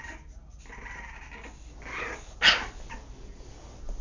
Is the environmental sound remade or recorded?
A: recorded